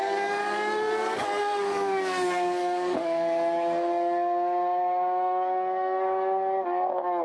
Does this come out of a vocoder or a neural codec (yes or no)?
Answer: yes